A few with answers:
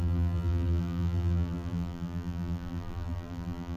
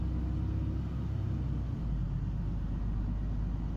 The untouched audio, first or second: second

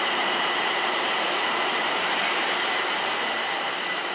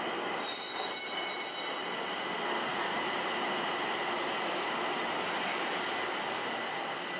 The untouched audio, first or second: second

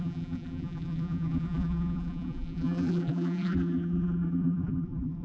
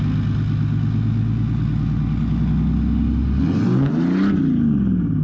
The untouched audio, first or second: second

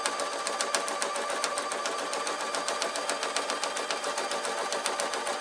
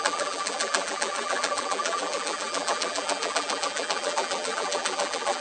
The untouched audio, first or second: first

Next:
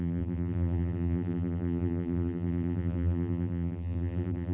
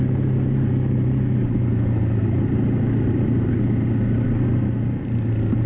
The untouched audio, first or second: second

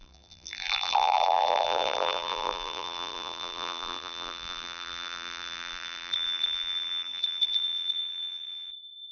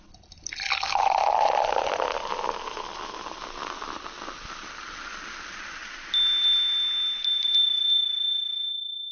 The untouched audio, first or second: second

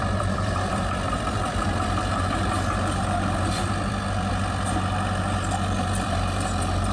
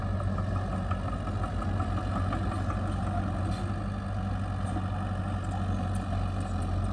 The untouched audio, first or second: second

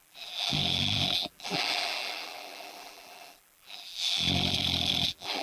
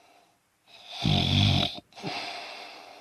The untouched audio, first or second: second